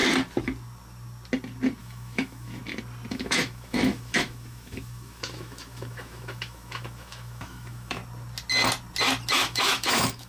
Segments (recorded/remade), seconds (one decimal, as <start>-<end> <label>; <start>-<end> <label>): 0.0-1.8 recorded; 1.8-2.6 remade; 2.6-3.1 recorded; 3.1-8.0 remade; 8.0-9.3 recorded; 9.3-10.3 remade